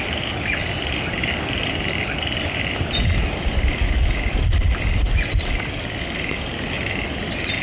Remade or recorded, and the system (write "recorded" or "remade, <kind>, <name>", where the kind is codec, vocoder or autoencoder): recorded